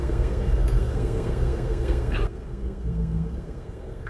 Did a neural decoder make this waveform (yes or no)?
yes